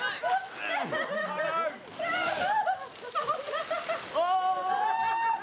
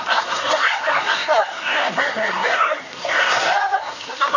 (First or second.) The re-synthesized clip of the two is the second